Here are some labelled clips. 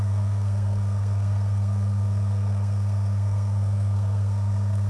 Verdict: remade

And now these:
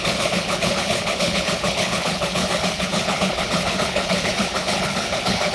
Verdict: remade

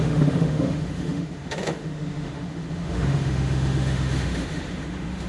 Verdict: remade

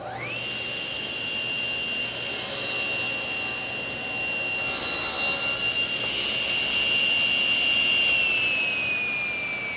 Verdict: recorded